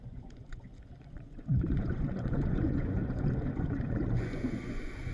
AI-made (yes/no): yes